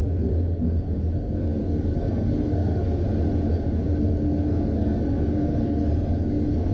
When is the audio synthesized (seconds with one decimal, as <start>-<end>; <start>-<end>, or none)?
0.0-3.0; 4.0-6.7